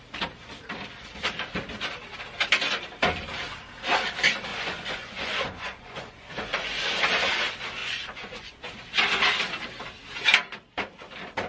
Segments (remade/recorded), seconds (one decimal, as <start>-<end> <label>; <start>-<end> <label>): 0.0-4.5 recorded; 4.5-7.0 remade; 7.0-7.8 recorded; 7.8-8.7 remade; 8.7-11.5 recorded